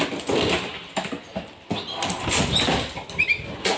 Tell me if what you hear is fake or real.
real